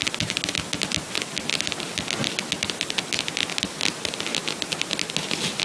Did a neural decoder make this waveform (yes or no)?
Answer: no